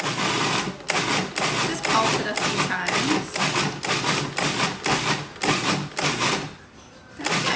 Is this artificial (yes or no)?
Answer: no